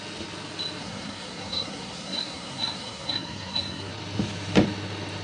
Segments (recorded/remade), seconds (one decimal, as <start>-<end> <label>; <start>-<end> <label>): 0.0-0.8 recorded; 0.8-3.9 remade; 3.9-5.2 recorded